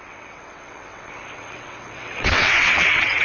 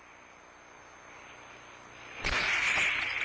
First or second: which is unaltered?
second